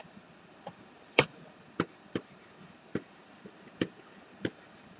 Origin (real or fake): fake